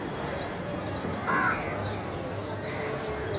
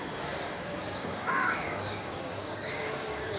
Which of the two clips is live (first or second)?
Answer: first